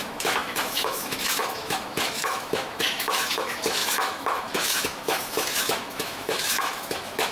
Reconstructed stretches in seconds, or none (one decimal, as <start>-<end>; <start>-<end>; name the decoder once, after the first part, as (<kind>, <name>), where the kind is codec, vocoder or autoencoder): 0.0-7.3 (autoencoder, DAC-VAE)